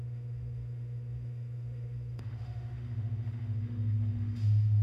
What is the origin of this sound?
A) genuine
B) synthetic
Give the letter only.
B